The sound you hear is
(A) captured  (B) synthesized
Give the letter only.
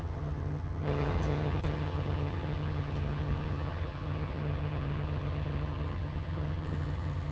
B